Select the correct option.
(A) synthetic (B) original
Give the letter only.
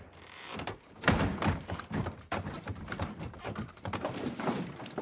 A